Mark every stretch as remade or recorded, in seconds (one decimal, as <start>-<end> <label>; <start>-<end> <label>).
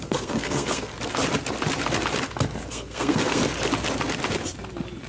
0.0-0.9 remade; 0.9-2.7 recorded; 2.7-3.4 remade; 3.4-5.1 recorded